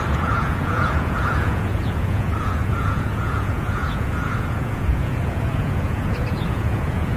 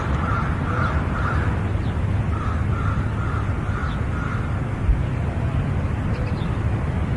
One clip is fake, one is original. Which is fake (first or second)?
first